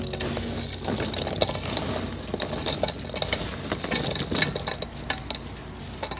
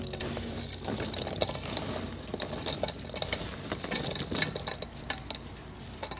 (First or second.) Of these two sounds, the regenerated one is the second